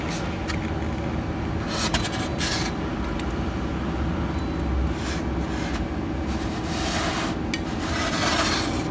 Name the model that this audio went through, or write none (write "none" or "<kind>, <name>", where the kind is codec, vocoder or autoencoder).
none